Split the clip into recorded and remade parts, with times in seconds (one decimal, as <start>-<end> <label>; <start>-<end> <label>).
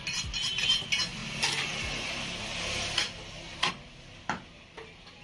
0.0-5.2 recorded